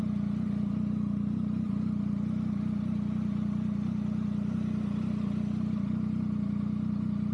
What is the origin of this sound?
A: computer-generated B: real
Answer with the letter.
B